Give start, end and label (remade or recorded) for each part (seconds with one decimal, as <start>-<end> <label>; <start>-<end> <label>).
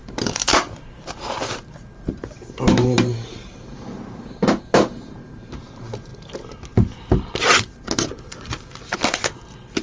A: 0.0-6.1 remade; 6.1-7.4 recorded; 7.4-9.8 remade